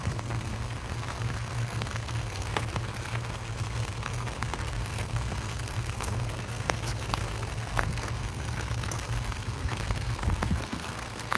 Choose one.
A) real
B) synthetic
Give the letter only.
B